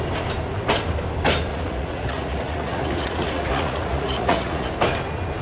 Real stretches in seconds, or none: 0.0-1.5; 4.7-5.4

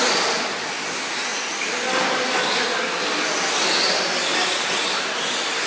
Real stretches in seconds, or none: 0.0-5.7

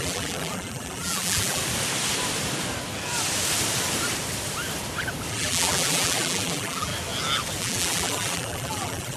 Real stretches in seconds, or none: 1.6-5.3; 6.9-7.6

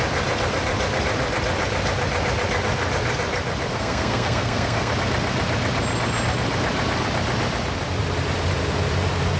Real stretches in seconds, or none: 0.0-3.7; 4.9-9.4